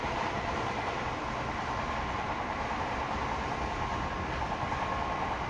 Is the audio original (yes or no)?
yes